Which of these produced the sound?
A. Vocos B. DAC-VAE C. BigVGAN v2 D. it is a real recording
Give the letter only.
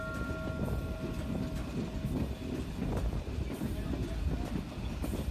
D